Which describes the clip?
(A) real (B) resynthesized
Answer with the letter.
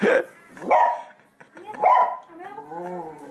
A